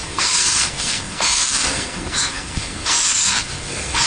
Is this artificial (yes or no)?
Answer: yes